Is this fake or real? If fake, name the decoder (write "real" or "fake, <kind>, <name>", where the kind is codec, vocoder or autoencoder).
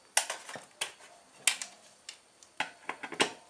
real